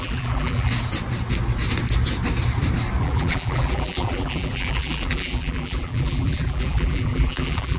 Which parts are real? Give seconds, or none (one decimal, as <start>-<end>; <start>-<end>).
0.7-3.0